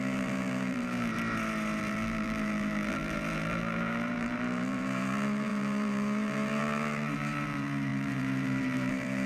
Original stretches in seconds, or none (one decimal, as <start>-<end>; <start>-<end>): 1.1-1.8